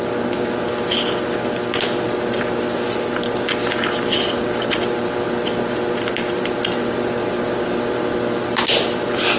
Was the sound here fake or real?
real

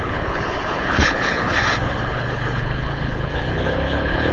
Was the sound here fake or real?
fake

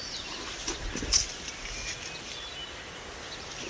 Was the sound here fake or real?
real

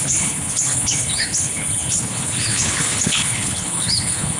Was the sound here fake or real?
fake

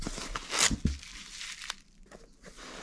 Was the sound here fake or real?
real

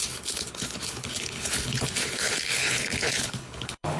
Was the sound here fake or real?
fake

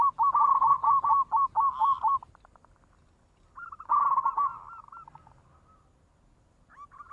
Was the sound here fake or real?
real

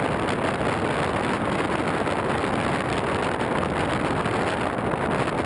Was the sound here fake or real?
real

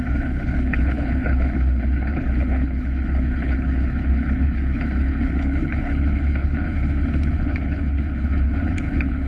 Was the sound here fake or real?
fake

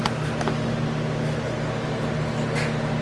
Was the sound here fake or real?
real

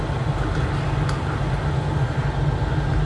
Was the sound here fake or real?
real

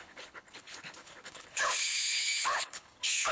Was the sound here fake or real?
fake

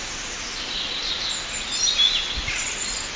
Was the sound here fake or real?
real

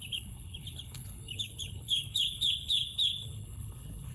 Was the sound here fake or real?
fake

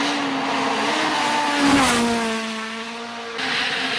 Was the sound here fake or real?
real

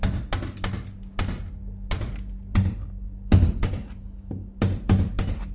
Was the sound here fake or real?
real